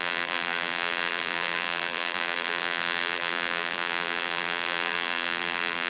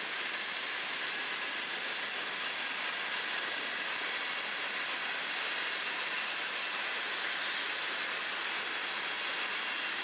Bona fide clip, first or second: second